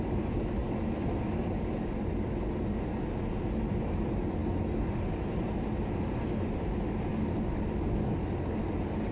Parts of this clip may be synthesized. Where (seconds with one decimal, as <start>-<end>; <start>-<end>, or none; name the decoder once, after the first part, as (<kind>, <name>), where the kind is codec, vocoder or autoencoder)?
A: none

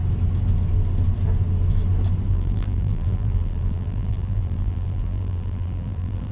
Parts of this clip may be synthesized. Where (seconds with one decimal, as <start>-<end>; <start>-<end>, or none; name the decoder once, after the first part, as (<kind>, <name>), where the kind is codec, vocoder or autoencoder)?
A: 2.3-6.3 (vocoder, BigVGAN v2)

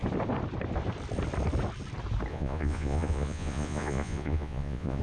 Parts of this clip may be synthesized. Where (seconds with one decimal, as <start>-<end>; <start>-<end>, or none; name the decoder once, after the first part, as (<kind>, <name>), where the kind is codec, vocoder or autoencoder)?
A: 2.3-5.0 (vocoder, Vocos)